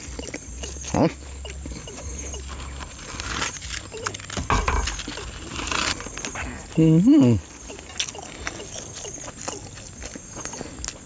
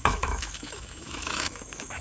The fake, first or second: second